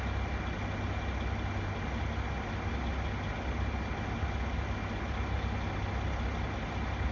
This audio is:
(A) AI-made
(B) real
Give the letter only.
B